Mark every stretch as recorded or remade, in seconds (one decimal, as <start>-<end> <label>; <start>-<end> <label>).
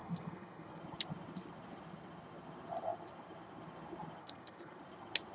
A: 0.0-0.8 remade; 0.8-4.2 recorded; 4.2-4.8 remade; 4.8-5.3 recorded